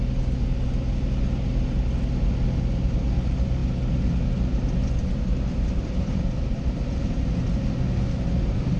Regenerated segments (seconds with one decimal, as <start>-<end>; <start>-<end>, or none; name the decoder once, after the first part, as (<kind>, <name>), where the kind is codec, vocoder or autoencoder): none